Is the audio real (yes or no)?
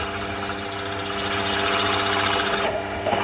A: yes